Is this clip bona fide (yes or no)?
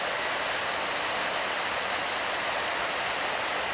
yes